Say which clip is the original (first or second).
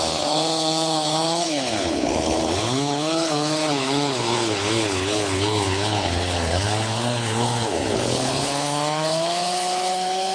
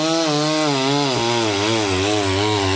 second